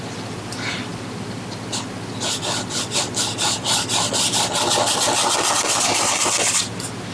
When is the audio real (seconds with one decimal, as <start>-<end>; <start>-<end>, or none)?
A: 0.0-7.1